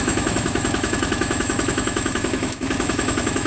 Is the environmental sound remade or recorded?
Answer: remade